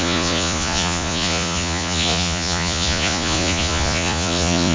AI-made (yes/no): yes